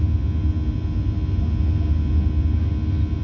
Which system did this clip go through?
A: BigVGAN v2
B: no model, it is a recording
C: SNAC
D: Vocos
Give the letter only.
B